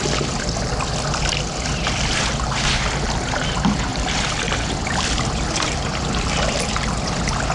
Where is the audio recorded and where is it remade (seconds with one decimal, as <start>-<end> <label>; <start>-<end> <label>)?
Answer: 0.0-3.9 recorded; 3.9-7.0 remade; 7.0-7.5 recorded